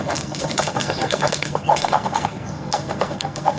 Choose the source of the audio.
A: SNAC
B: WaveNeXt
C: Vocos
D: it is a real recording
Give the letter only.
A